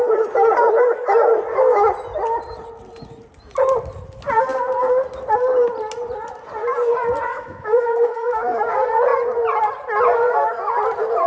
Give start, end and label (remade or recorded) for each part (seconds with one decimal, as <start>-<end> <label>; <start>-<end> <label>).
0.0-7.3 recorded; 7.3-8.6 remade; 8.6-11.3 recorded